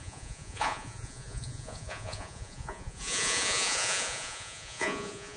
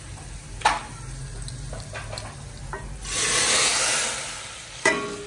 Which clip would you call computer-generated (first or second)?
first